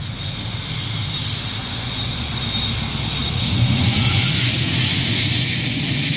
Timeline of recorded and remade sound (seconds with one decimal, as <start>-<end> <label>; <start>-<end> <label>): 0.0-1.6 recorded; 1.6-2.4 remade; 2.4-3.2 recorded; 3.2-6.2 remade